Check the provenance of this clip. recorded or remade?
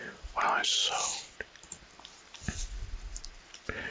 recorded